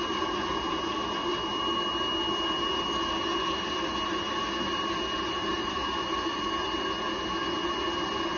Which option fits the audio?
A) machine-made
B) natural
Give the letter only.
B